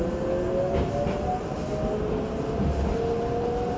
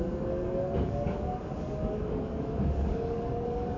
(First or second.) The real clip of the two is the first